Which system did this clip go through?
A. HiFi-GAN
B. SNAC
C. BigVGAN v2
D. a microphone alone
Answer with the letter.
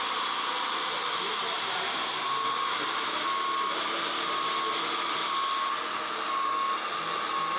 D